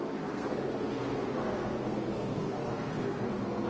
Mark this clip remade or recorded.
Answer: remade